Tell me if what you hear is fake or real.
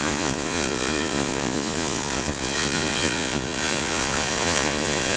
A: fake